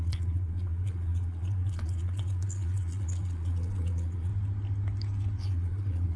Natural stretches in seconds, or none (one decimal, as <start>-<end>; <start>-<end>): 4.3-5.4